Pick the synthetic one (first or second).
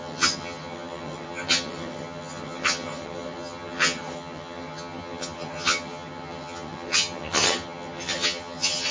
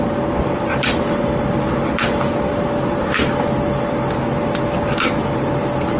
first